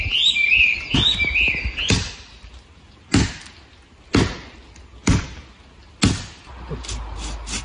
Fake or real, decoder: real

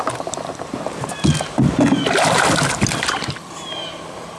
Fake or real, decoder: real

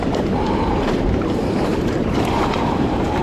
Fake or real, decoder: fake, vocoder, BigVGAN v2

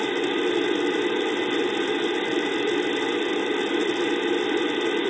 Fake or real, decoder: real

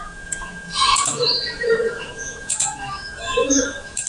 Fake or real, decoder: fake, autoencoder, DAC-VAE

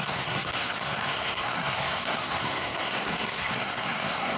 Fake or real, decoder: fake, codec, SNAC